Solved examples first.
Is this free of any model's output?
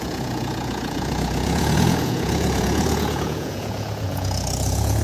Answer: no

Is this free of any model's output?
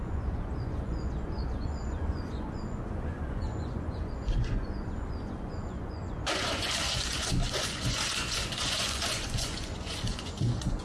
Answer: no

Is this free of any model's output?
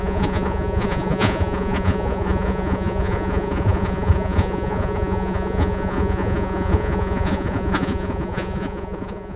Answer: no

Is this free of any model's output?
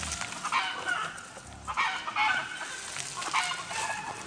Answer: yes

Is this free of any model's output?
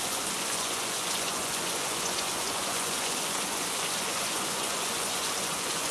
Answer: no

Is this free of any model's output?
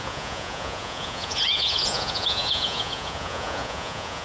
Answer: no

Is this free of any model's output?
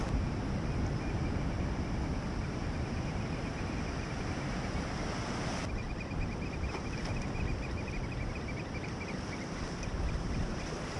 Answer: yes